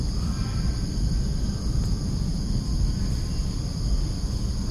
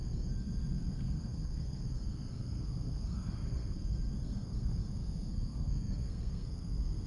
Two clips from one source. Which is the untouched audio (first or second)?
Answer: first